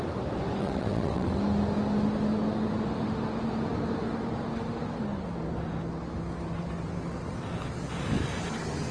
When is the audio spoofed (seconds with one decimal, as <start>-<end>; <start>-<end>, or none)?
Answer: 0.6-1.4